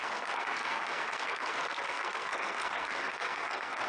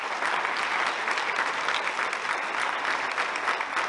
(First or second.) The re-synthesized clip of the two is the first